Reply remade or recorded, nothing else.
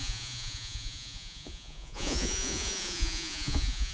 remade